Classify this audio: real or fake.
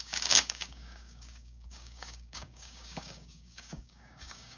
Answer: fake